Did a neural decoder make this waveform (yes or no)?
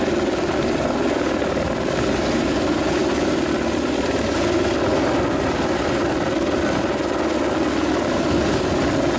no